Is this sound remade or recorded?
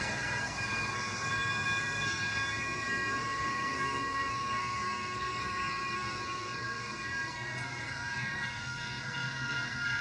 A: remade